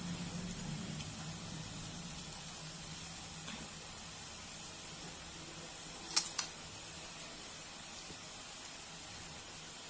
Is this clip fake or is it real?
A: real